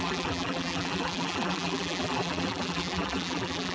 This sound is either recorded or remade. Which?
remade